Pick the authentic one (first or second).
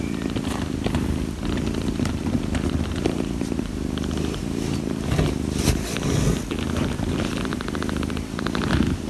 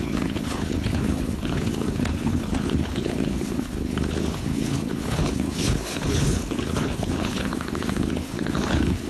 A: first